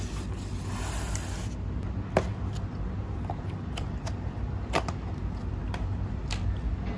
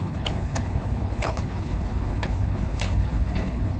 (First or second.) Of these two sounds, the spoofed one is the second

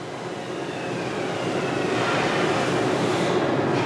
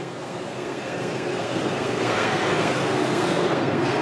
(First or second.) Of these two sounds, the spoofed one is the second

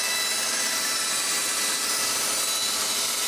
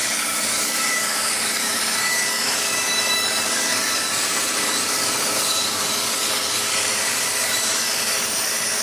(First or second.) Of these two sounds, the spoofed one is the second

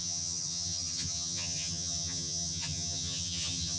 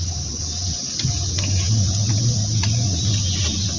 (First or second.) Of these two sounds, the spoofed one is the first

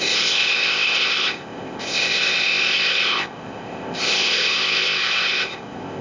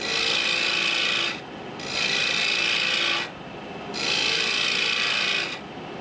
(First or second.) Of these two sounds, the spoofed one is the first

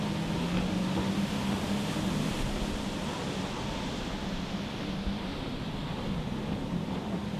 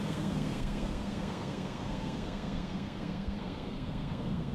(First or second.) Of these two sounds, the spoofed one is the second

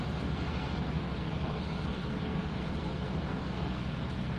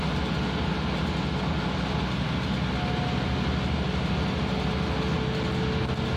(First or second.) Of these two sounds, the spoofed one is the first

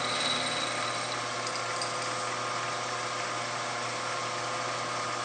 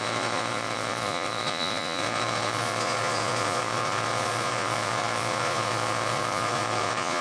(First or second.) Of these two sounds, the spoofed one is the second